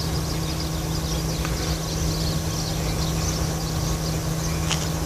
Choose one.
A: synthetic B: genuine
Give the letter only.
B